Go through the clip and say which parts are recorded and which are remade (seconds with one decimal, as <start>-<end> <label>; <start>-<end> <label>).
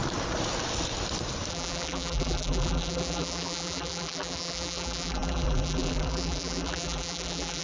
0.0-1.5 recorded; 1.5-7.6 remade